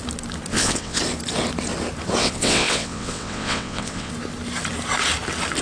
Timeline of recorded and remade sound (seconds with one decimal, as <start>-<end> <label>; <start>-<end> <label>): 0.0-0.5 recorded; 0.5-1.0 remade; 1.0-2.2 recorded; 2.2-4.1 remade; 4.1-5.6 recorded